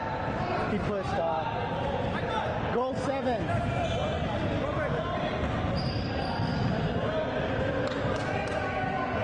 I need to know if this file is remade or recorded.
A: recorded